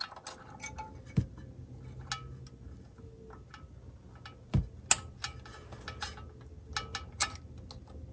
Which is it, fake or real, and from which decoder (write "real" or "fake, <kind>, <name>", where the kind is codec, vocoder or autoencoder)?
real